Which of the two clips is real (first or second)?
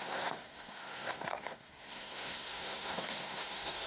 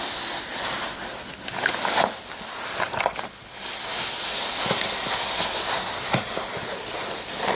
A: second